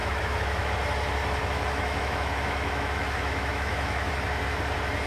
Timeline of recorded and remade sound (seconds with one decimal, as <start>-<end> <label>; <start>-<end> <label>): 0.0-0.7 remade; 0.7-1.4 recorded; 1.4-4.1 remade; 4.1-5.1 recorded